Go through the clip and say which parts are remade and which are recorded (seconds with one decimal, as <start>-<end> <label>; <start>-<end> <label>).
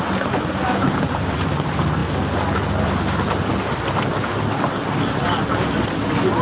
0.0-6.4 recorded